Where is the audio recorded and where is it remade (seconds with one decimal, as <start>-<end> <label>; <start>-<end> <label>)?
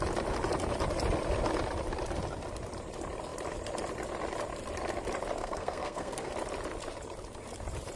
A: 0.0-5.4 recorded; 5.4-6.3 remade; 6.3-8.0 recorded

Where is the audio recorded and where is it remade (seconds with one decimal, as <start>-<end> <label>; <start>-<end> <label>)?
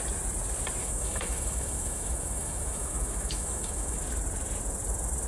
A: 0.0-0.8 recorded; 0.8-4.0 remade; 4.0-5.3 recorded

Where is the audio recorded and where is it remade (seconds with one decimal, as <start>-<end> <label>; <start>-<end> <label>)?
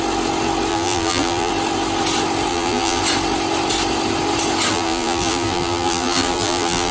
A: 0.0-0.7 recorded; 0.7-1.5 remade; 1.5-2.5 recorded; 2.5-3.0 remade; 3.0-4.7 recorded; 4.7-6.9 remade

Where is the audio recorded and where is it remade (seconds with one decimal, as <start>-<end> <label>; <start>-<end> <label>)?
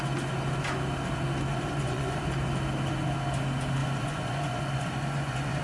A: 0.0-1.5 recorded; 1.5-2.2 remade; 2.2-3.8 recorded; 3.8-5.6 remade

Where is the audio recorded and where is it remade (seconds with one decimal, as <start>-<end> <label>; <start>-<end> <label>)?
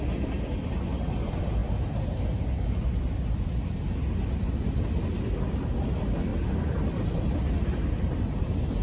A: 0.0-8.8 recorded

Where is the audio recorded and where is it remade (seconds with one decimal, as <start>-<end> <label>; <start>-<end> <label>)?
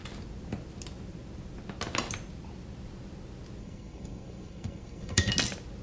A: 0.0-3.6 recorded; 3.6-5.3 remade; 5.3-5.8 recorded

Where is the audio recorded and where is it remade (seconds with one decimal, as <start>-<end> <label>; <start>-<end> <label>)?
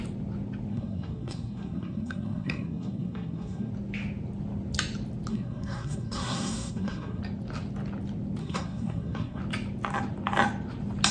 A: 0.0-0.7 recorded; 0.7-3.7 remade; 3.7-5.3 recorded; 5.3-7.2 remade; 7.2-8.4 recorded; 8.4-9.4 remade; 9.4-11.1 recorded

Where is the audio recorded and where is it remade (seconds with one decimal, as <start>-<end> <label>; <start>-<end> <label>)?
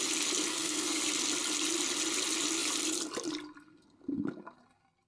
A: 0.0-0.5 recorded; 0.5-1.0 remade; 1.0-5.1 recorded